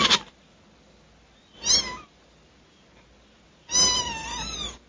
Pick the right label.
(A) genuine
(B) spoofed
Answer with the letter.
A